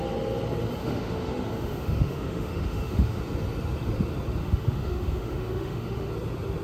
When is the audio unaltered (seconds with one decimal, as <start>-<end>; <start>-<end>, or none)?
0.0-0.8; 3.2-4.4; 6.1-6.6